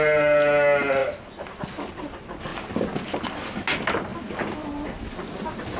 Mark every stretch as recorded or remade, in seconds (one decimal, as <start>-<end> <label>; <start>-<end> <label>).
0.0-5.8 recorded